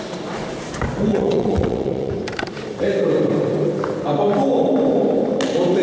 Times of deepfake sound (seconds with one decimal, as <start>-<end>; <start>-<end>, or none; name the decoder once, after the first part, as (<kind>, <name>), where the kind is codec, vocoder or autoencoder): 1.1-2.1 (vocoder, WaveNeXt)